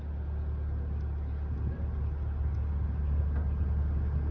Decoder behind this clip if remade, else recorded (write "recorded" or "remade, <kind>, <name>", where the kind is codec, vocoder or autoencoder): recorded